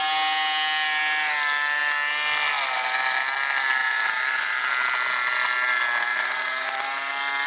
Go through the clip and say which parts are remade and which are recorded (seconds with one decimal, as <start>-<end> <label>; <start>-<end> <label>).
0.0-3.8 recorded; 3.8-4.7 remade; 4.7-6.1 recorded; 6.1-7.1 remade; 7.1-7.5 recorded